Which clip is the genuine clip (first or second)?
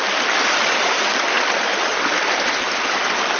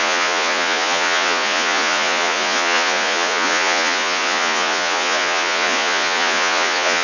first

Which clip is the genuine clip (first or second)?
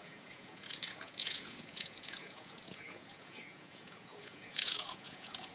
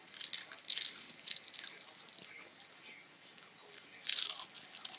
second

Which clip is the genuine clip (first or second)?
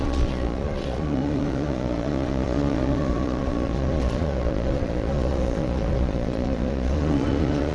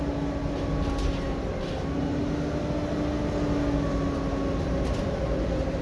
second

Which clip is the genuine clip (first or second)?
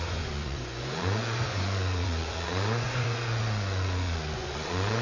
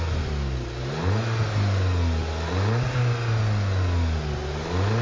second